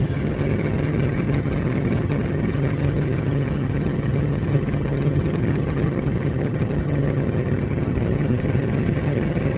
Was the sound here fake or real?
fake